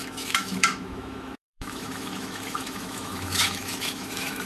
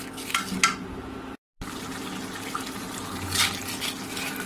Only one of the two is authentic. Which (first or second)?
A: second